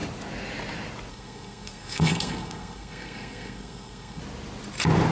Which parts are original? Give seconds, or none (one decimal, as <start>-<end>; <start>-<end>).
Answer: 0.0-1.1; 4.2-5.1